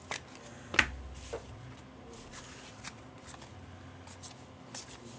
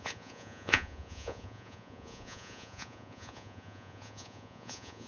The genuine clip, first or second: first